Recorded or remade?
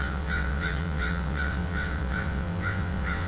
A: remade